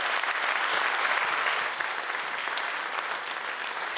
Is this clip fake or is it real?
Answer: real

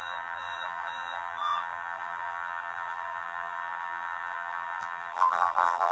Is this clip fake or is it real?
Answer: fake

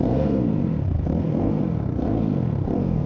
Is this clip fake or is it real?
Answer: fake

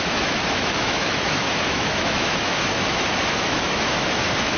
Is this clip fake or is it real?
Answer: fake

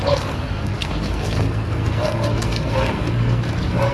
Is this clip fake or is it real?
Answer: fake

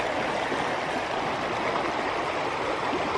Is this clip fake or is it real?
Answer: real